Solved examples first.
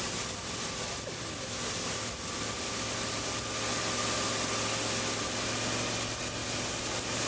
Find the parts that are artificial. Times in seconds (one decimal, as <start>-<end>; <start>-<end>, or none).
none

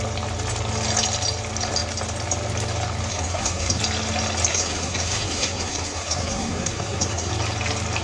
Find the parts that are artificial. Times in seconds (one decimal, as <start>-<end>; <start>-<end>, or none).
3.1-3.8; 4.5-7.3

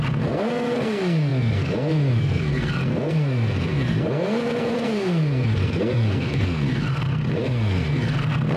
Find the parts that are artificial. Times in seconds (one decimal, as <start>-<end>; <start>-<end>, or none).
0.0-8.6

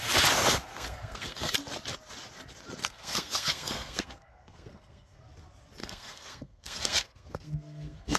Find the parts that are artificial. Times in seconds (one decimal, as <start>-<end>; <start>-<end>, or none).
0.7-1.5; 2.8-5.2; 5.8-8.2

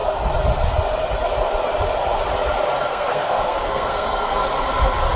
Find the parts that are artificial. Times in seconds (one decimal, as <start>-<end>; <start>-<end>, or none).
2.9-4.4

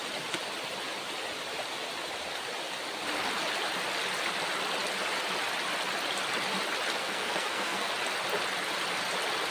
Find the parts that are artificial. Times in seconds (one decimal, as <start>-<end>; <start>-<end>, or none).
7.0-7.9